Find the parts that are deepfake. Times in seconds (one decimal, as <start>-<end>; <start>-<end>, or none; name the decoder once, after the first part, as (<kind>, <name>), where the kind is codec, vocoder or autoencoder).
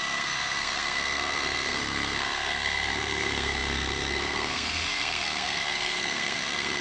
0.0-6.8 (codec, SNAC)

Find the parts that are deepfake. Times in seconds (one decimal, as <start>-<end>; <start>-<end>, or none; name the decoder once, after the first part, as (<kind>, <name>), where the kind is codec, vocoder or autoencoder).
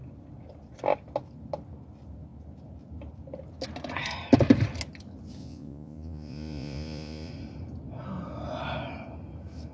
5.4-7.3 (vocoder, Vocos)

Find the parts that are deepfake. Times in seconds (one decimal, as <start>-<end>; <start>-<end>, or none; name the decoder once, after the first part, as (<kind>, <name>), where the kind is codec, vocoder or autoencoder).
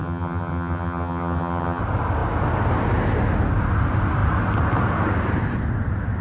0.0-1.8 (vocoder, HiFi-GAN)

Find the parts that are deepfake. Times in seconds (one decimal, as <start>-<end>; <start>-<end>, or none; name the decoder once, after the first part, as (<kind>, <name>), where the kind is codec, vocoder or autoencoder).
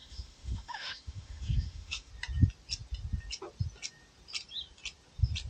0.0-2.1 (autoencoder, DAC-VAE)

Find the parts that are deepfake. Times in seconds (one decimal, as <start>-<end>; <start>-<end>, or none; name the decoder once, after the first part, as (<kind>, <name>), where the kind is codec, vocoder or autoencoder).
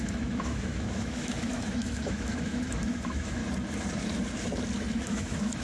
0.0-3.4 (autoencoder, DAC-VAE); 4.9-5.6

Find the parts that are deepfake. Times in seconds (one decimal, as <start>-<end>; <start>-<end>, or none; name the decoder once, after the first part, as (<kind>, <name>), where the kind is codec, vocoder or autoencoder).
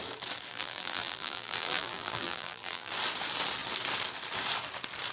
0.5-2.9 (vocoder, BigVGAN v2)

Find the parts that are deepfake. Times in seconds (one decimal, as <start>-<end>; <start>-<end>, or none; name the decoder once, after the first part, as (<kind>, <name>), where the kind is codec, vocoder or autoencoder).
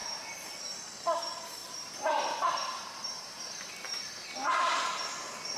0.0-0.6 (vocoder, BigVGAN v2); 1.6-4.3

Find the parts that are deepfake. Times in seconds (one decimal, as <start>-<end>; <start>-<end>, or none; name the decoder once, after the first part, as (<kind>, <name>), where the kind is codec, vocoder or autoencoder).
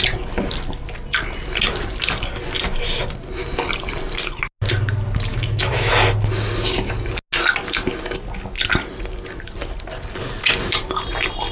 5.3-5.9 (autoencoder, DAC-VAE)